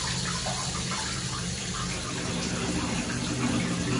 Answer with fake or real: real